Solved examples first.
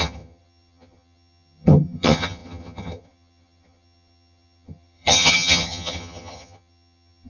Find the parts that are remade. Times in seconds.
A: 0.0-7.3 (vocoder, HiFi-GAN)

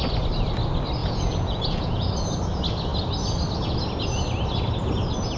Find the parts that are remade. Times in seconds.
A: 1.0-2.1 (vocoder, Vocos)

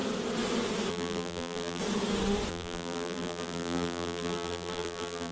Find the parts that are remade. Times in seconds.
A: 0.9-1.8 (vocoder, BigVGAN v2); 2.5-5.3